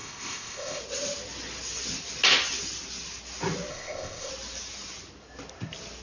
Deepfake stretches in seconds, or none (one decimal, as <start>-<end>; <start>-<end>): 0.0-0.8; 3.7-4.3